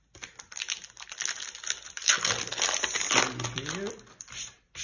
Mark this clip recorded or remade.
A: recorded